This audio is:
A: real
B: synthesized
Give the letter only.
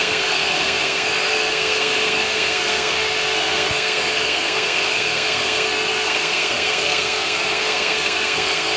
B